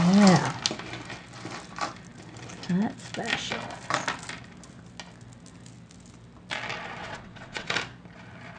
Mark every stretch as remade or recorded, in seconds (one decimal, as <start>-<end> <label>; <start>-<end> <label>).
0.0-7.0 recorded; 7.0-7.7 remade; 7.7-8.6 recorded